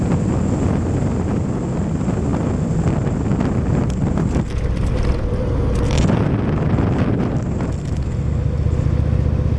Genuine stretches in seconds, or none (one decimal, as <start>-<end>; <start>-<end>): 0.0-9.6